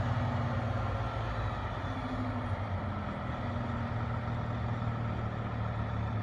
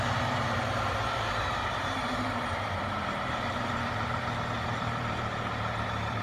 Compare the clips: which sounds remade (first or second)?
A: second